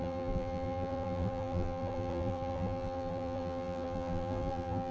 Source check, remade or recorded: remade